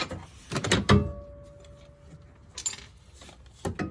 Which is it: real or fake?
real